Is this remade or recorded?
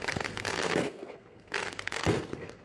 remade